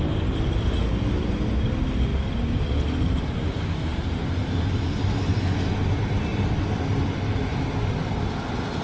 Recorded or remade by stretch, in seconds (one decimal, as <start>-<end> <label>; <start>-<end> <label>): 0.0-3.9 recorded; 3.9-4.7 remade; 4.7-8.8 recorded